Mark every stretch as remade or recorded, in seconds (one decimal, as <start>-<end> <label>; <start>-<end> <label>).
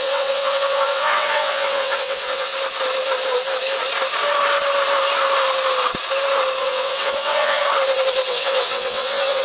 0.0-2.5 remade; 2.5-6.6 recorded; 6.6-7.6 remade; 7.6-8.3 recorded; 8.3-9.4 remade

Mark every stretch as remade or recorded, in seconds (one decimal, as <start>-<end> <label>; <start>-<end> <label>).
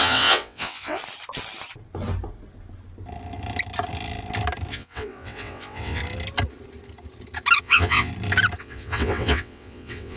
0.0-1.0 remade; 1.0-4.7 recorded; 4.7-6.0 remade; 6.0-7.6 recorded; 7.6-8.1 remade; 8.1-8.6 recorded; 8.6-10.2 remade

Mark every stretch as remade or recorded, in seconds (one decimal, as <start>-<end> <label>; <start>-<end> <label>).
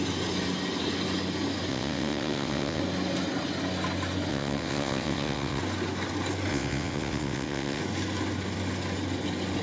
0.0-1.7 recorded; 1.7-2.8 remade; 2.8-4.3 recorded; 4.3-5.6 remade; 5.6-6.5 recorded; 6.5-7.8 remade; 7.8-9.6 recorded